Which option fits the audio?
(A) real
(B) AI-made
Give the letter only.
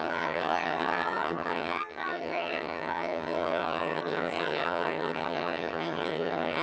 B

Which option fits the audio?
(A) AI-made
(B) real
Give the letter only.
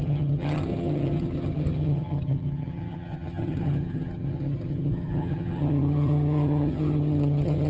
A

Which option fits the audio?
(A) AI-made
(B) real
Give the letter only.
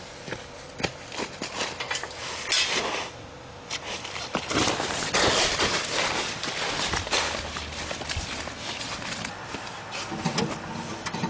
B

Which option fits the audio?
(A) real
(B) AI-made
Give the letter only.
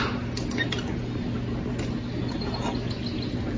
A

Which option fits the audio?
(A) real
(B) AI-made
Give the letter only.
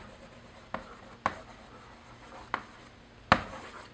A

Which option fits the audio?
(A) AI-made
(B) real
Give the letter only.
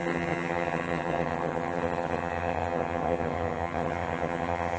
A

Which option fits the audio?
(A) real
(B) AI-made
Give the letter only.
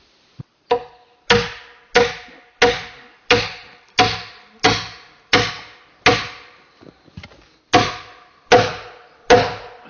A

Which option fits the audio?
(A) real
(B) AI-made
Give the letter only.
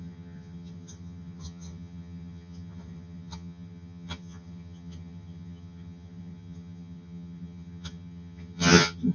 B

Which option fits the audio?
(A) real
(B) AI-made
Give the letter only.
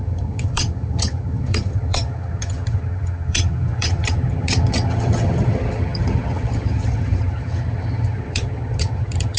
B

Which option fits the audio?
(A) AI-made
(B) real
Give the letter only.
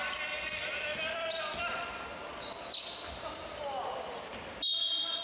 B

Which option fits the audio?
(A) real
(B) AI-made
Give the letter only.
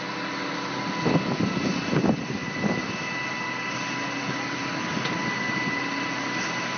A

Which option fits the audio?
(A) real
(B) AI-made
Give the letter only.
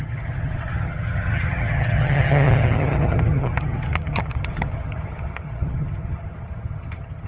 B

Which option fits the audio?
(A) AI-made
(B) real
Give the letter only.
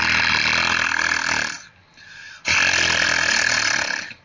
B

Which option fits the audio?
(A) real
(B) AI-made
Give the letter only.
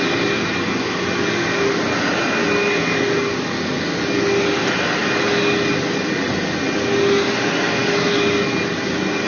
A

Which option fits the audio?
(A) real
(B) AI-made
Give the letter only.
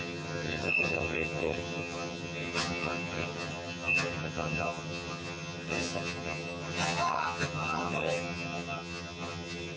B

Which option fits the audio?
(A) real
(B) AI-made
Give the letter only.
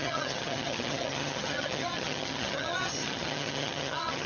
B